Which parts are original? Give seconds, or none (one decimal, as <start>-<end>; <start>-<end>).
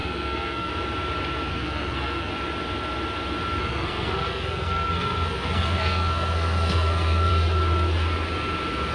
0.7-1.5; 2.3-3.6; 7.3-8.9